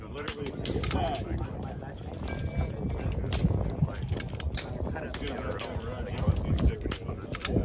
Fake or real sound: real